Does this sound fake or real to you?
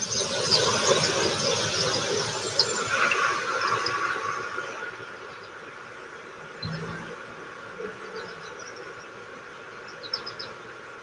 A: real